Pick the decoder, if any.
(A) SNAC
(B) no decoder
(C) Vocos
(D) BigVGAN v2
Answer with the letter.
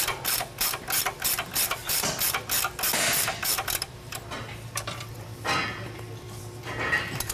D